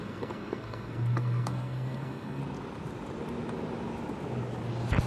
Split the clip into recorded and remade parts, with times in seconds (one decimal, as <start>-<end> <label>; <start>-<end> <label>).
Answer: 0.0-2.4 remade; 2.4-5.1 recorded